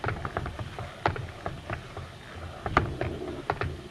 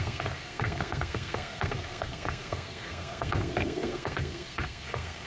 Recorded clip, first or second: first